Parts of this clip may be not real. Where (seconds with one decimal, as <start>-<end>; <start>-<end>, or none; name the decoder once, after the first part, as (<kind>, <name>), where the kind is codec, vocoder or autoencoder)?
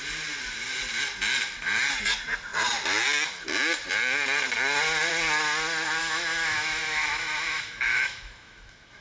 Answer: 6.0-9.0 (autoencoder, DAC-VAE)